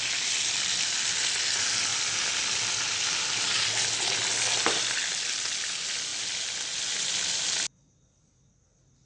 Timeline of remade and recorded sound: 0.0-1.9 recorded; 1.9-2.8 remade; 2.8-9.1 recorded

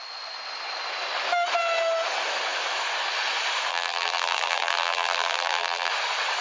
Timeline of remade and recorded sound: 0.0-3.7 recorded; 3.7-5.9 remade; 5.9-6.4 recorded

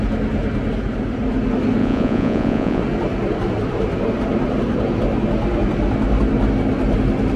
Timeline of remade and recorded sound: 0.0-1.8 recorded; 1.8-2.8 remade; 2.8-7.4 recorded

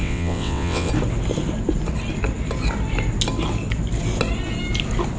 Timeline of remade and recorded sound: 0.0-0.9 remade; 0.9-5.2 recorded